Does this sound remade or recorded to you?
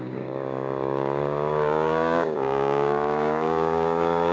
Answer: remade